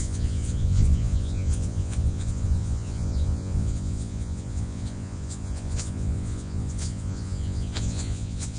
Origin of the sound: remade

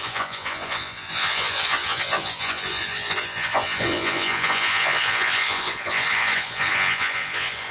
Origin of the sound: remade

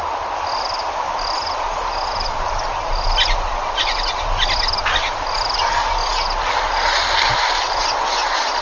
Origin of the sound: recorded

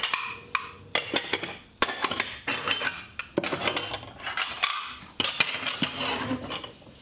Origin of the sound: recorded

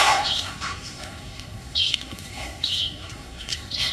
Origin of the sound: remade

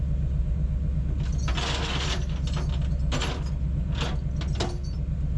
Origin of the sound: recorded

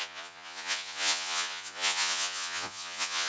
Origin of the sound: remade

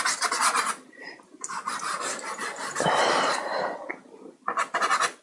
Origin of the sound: recorded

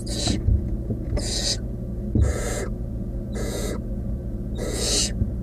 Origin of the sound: remade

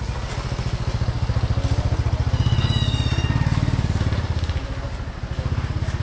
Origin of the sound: recorded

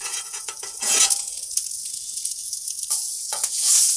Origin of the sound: remade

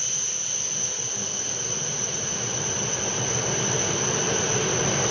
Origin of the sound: recorded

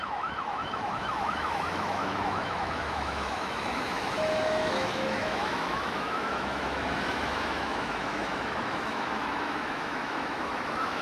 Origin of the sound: remade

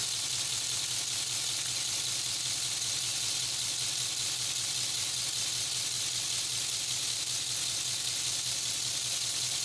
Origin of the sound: recorded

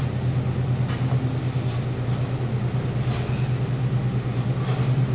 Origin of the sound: recorded